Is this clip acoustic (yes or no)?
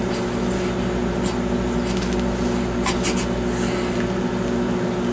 yes